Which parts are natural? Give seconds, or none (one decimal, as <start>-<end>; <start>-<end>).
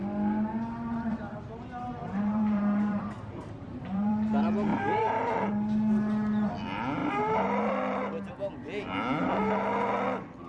0.0-2.0; 4.1-4.7; 5.2-7.0; 7.7-10.5